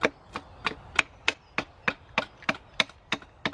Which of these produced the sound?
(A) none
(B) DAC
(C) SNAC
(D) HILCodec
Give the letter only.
A